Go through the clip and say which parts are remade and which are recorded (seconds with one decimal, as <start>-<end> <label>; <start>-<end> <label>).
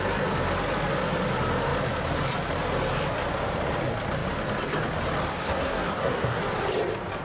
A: 0.0-5.3 recorded; 5.3-6.4 remade; 6.4-7.2 recorded